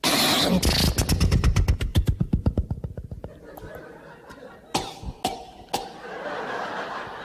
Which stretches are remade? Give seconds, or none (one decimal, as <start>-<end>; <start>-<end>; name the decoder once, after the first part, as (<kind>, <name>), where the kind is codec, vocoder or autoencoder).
none